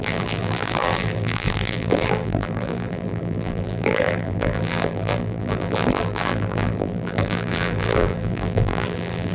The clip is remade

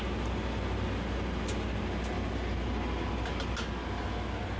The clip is recorded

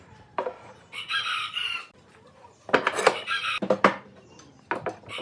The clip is recorded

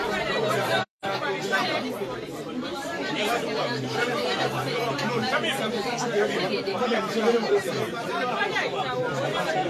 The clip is remade